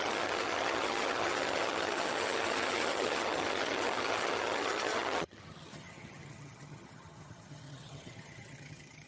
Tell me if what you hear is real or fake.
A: fake